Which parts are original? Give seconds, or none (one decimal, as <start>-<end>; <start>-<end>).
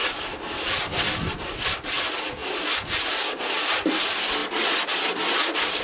0.0-5.8